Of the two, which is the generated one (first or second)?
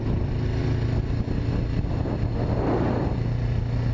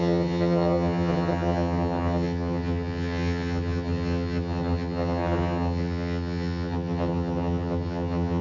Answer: second